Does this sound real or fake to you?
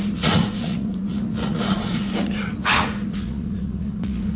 fake